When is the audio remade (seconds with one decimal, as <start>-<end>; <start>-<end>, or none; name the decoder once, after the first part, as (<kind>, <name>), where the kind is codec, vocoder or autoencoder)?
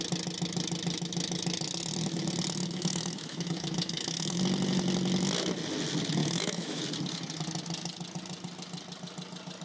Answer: 2.6-4.4 (autoencoder, DAC-VAE); 6.2-6.8